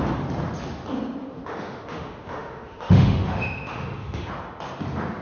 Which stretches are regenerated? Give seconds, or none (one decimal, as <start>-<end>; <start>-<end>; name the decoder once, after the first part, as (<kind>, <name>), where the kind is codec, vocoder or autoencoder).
1.2-4.3 (autoencoder, DAC-VAE)